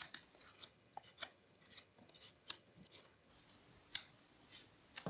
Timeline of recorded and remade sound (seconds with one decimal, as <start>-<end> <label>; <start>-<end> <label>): 0.0-0.5 recorded; 0.5-3.3 remade; 3.3-5.1 recorded